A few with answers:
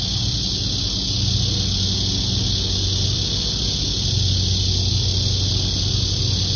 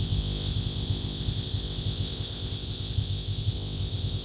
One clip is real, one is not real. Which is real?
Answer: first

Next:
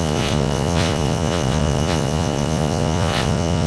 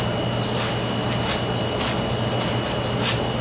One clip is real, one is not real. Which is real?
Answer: second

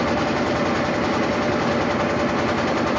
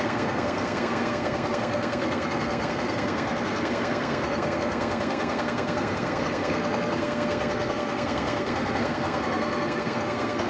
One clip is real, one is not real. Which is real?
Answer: first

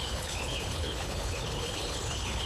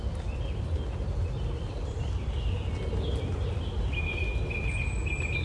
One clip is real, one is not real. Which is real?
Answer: second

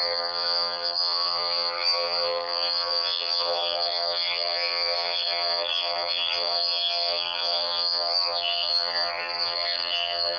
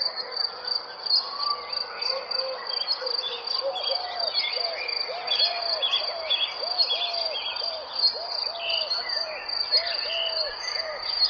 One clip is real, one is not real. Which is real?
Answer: second